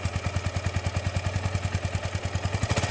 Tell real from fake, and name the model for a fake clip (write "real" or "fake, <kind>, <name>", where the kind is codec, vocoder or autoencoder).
real